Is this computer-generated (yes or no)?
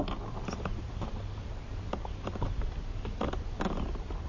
no